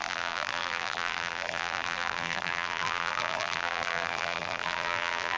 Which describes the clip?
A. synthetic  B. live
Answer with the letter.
A